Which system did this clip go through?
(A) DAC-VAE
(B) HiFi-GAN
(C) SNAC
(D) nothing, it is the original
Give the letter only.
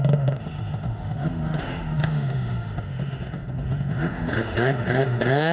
A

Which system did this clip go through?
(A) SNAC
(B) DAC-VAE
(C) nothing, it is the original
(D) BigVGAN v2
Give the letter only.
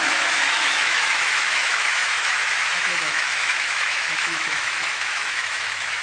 B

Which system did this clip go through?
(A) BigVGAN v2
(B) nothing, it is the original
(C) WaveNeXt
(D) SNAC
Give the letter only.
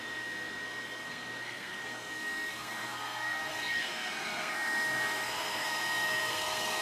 D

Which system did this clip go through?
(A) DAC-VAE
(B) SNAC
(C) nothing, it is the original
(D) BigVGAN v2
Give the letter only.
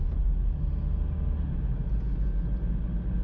C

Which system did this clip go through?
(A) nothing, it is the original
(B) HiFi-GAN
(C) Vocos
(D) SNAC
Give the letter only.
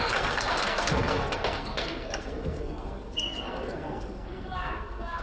D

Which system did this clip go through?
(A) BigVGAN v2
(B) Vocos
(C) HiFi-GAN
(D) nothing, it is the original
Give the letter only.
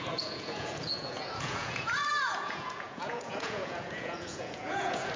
B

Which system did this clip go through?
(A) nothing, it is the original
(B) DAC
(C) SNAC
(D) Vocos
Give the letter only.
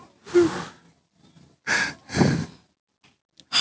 A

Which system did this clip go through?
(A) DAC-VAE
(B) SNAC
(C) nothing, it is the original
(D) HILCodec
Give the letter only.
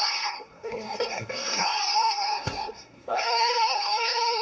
B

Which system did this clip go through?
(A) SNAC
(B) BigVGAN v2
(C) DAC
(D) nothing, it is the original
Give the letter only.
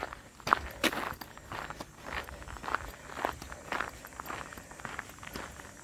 D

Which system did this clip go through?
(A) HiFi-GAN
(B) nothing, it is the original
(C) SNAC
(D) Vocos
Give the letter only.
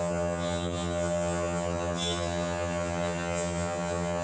A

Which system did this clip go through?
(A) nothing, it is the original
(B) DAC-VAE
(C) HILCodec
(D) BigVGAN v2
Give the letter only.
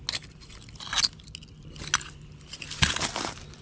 A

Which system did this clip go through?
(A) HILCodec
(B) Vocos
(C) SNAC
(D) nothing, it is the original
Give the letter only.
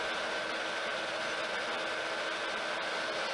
D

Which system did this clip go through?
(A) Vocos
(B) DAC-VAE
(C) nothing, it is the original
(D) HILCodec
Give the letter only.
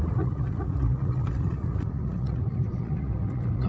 A